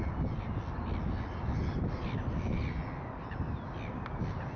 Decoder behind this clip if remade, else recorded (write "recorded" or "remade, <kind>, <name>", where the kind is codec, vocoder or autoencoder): recorded